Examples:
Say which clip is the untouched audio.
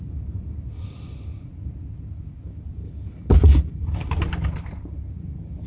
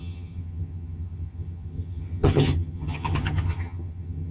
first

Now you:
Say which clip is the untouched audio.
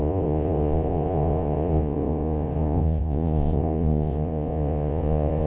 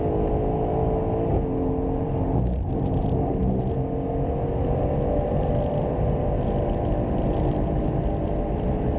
second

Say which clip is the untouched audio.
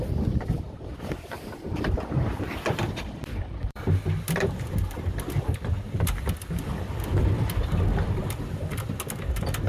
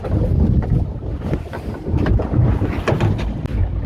second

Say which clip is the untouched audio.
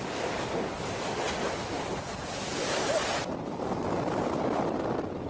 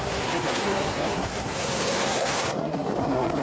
first